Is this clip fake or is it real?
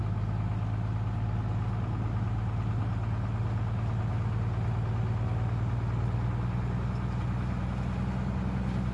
real